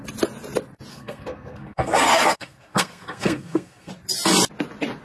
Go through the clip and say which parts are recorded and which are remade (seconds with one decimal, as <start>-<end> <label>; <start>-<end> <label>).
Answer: 0.0-0.9 recorded; 0.9-3.9 remade; 3.9-5.0 recorded